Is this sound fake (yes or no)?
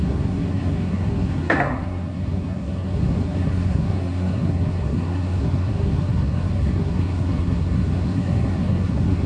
yes